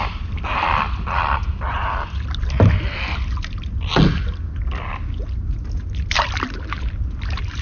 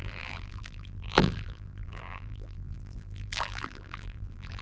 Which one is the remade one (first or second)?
second